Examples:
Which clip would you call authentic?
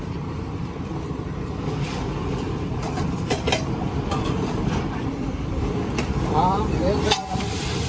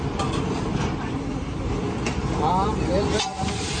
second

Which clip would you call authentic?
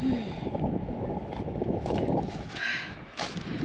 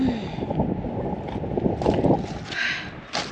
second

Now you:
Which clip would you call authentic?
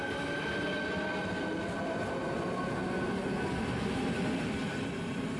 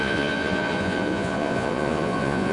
first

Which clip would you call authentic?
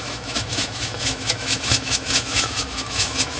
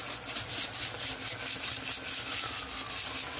second